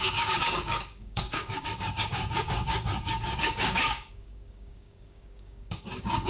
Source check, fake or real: fake